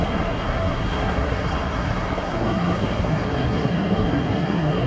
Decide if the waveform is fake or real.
fake